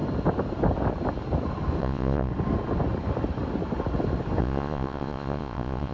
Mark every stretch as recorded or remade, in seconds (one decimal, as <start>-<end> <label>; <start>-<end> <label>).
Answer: 0.0-1.8 recorded; 1.8-2.3 remade; 2.3-4.4 recorded; 4.4-5.9 remade